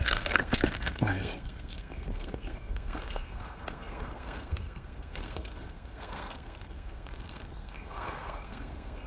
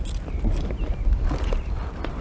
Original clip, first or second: second